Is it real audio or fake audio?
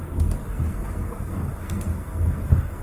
fake